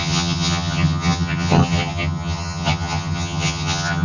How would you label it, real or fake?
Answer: fake